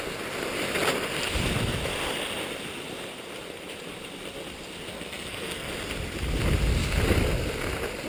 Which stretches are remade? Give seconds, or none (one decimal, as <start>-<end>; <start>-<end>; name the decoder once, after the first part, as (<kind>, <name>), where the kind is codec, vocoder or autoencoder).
4.9-5.7 (codec, SNAC)